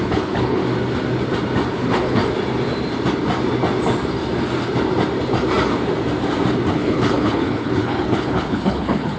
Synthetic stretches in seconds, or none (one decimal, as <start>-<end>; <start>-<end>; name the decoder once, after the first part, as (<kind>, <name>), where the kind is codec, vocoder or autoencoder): 0.0-0.6 (codec, HILCodec); 1.7-2.2; 6.7-9.2